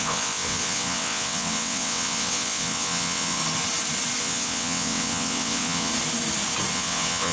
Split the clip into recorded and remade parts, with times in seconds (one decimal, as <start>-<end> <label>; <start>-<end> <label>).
0.0-3.4 remade; 3.4-4.2 recorded; 4.2-5.9 remade; 5.9-6.7 recorded; 6.7-7.3 remade